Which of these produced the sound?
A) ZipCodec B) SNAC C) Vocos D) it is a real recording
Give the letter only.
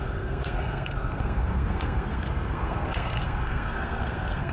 B